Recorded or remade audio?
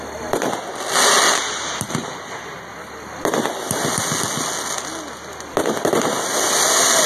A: recorded